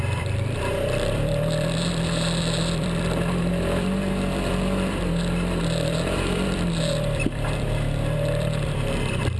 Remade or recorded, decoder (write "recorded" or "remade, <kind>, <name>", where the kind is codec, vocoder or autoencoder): remade, vocoder, BigVGAN v2